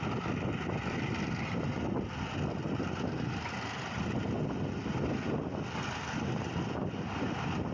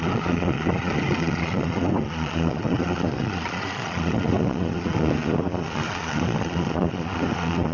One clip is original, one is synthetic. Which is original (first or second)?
first